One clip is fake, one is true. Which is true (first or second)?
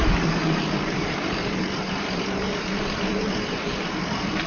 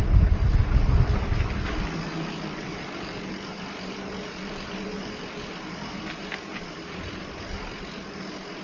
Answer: second